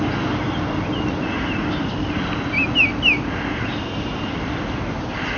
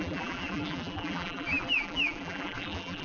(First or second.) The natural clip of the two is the first